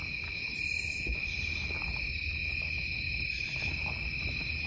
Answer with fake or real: real